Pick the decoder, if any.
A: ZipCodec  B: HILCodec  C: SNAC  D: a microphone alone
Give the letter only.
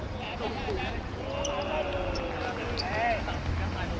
D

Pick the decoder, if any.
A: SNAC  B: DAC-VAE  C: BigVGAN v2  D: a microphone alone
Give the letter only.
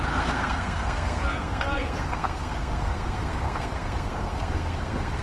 A